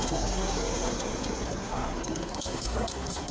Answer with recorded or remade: remade